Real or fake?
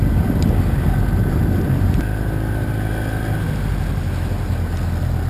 real